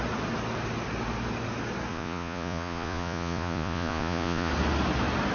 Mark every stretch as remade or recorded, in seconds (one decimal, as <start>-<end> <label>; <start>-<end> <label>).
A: 0.0-1.9 recorded; 1.9-4.5 remade; 4.5-5.3 recorded